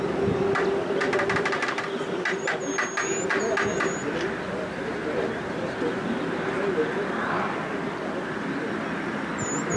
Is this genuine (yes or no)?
yes